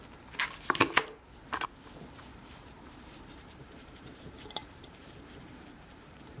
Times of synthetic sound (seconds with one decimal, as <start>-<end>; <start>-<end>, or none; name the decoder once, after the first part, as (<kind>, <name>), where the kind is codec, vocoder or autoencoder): 2.3-6.4 (vocoder, BigVGAN v2)